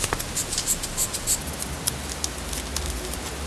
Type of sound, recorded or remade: recorded